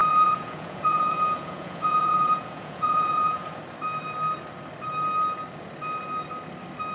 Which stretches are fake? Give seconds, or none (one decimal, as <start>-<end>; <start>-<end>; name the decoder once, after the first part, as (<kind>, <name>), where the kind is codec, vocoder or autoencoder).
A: 0.0-3.6 (vocoder, Vocos)